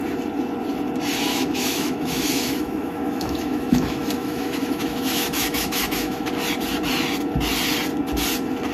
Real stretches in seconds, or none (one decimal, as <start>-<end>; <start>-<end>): 0.0-1.3; 6.3-8.7